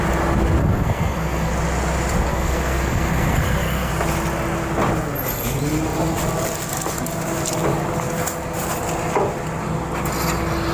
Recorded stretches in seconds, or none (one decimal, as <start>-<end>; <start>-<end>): 0.0-0.6; 1.5-2.3; 3.9-10.7

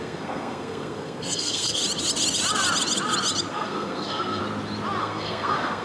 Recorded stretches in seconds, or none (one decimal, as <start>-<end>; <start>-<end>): 1.8-3.5; 4.4-5.0

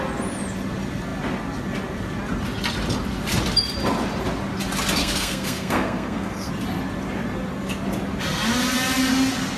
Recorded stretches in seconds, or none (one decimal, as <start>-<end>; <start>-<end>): 0.0-5.0; 6.5-9.6

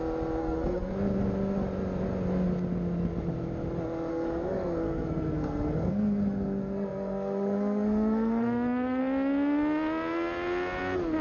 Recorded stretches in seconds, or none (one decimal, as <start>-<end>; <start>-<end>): 0.0-0.4; 0.9-4.1; 9.0-11.2

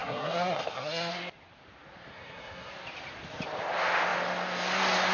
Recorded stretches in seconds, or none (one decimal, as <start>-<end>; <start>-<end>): 1.1-2.1; 2.7-5.1

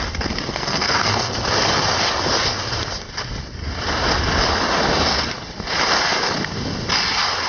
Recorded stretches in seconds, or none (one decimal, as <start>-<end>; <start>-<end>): 0.0-0.5; 1.3-7.5

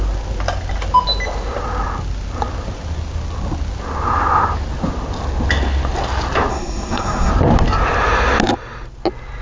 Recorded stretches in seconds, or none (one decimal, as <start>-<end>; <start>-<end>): 0.0-6.5; 7.3-9.4

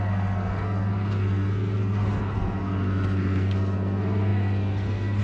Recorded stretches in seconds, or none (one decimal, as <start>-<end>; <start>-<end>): none